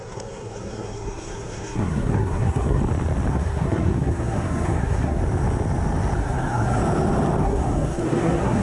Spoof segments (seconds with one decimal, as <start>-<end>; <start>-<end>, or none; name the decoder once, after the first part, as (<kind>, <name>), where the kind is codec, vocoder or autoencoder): 0.0-2.8 (codec, SNAC); 3.3-5.2; 6.2-6.8; 7.4-8.6